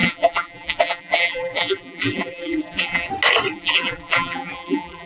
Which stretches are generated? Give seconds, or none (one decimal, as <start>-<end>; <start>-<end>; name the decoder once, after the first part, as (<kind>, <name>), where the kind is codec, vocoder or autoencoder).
0.0-3.1 (vocoder, BigVGAN v2); 3.5-5.1